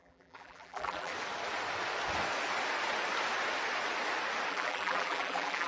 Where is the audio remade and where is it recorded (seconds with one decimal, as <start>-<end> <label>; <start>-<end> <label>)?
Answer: 0.0-1.1 remade; 1.1-4.5 recorded; 4.5-5.7 remade